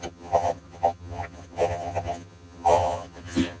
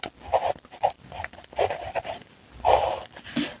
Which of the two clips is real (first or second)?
second